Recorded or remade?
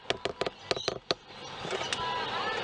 recorded